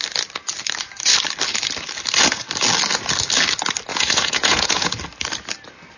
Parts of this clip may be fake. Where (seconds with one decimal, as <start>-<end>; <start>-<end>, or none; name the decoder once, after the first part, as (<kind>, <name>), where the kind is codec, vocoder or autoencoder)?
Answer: 3.9-5.0 (vocoder, Vocos)